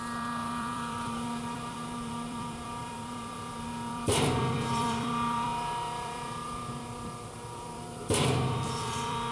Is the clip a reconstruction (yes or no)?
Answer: yes